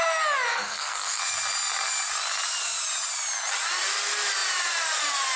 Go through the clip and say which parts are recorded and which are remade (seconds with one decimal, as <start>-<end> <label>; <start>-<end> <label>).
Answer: 0.0-0.5 recorded; 0.5-1.2 remade; 1.2-5.4 recorded

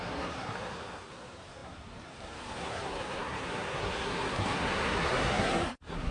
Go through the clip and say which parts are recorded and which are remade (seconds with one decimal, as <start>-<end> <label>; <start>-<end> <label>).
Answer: 0.0-6.1 remade

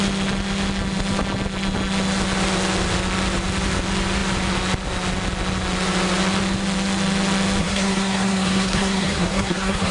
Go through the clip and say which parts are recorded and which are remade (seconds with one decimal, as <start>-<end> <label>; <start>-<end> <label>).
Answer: 0.0-7.6 recorded; 7.6-9.9 remade

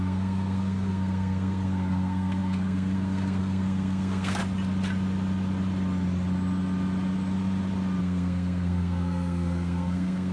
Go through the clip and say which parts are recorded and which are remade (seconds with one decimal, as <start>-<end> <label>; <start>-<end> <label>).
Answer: 0.0-4.4 remade; 4.4-8.0 recorded; 8.0-10.3 remade

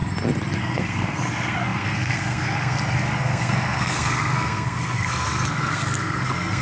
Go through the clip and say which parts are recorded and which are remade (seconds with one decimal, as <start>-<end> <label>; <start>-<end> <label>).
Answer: 0.0-0.6 recorded; 0.6-6.6 remade

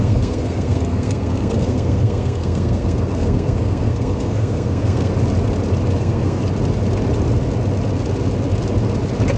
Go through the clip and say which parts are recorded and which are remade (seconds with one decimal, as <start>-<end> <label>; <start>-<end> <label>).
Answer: 0.0-5.1 remade; 5.1-6.0 recorded; 6.0-6.4 remade; 6.4-9.4 recorded

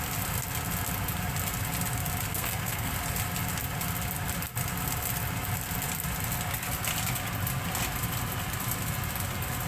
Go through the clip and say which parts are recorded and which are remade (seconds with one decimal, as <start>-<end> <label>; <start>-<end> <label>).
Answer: 0.0-2.3 recorded; 2.3-2.9 remade; 2.9-9.7 recorded